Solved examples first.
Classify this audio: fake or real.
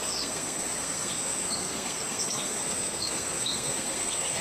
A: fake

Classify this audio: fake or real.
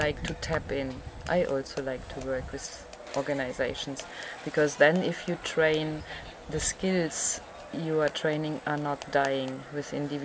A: real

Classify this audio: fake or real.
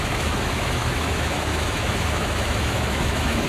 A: fake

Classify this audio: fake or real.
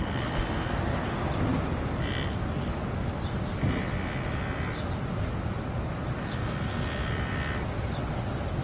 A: real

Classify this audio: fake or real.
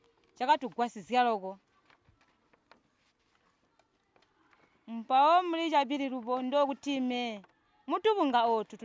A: real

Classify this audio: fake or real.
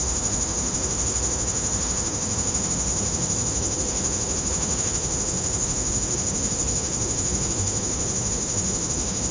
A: fake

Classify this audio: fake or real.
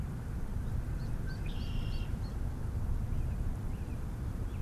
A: fake